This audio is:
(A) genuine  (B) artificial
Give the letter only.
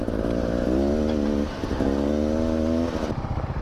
A